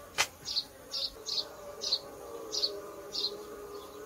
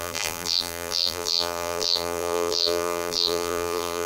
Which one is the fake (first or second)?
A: second